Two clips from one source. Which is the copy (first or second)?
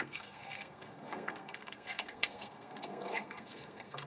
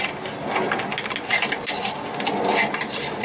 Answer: first